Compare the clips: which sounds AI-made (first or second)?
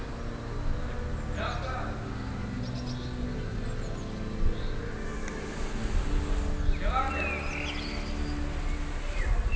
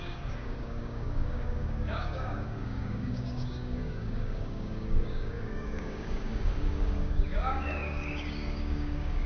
second